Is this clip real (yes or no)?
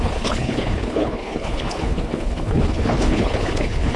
no